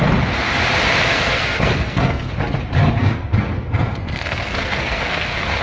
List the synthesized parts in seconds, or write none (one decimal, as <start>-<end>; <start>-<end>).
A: 1.1-2.3; 3.0-5.6